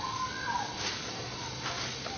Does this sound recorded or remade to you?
recorded